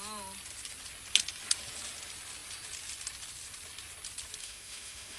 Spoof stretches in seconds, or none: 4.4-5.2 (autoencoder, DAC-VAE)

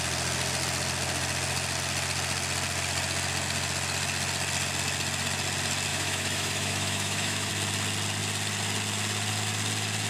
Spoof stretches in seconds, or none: 5.9-7.5 (autoencoder, DAC-VAE)